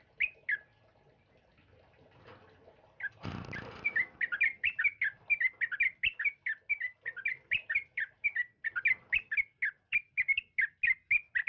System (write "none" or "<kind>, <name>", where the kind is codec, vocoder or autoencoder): none